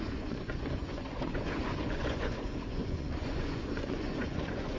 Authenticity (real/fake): fake